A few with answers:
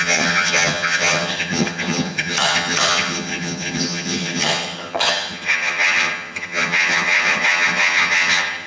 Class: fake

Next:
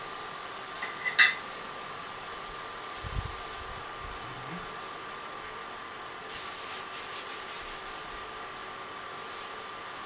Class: real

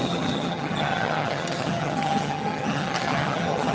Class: fake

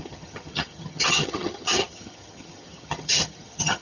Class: fake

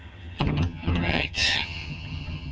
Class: fake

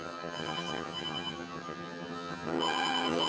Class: fake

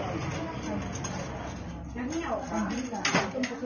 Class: real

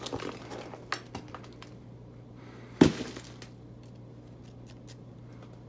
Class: real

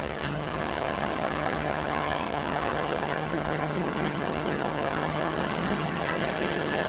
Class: fake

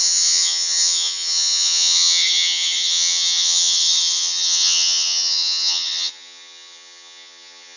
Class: fake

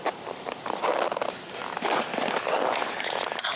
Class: real